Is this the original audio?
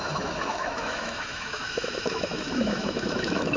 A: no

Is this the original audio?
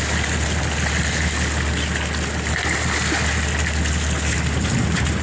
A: yes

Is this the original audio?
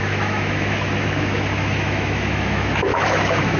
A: no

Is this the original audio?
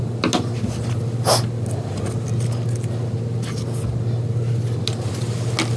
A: yes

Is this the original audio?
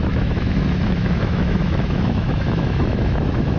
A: no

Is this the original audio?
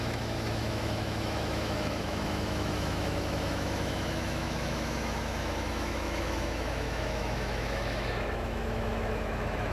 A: no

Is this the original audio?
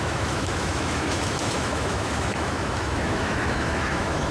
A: no